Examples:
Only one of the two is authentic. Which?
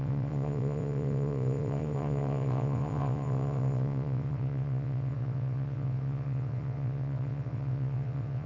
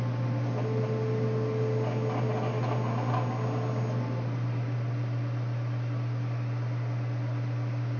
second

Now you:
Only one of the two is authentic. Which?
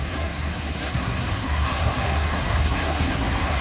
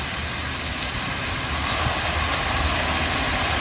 second